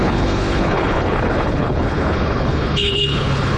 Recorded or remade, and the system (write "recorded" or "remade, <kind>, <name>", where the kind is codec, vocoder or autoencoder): remade, codec, HILCodec